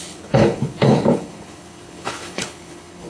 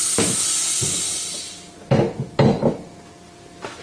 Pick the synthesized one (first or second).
first